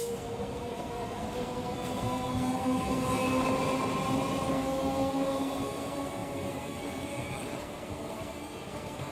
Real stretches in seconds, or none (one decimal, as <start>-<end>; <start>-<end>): 3.4-4.5